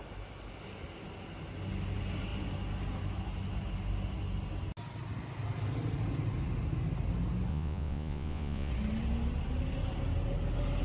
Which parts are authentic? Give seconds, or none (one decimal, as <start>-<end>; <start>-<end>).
0.0-7.5; 8.7-10.8